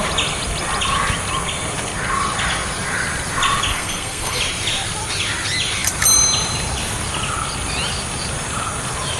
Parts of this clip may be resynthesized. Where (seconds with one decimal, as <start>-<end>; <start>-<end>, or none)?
3.7-4.4

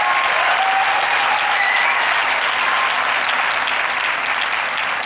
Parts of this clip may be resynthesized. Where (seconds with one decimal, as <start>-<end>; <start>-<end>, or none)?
none